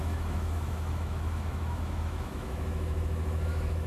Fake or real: fake